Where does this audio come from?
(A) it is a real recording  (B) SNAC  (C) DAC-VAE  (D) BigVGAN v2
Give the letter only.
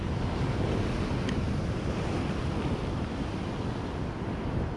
A